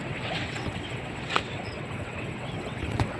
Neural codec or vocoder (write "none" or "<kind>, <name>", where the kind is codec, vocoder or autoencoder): vocoder, WaveNeXt